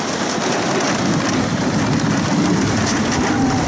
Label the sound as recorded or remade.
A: recorded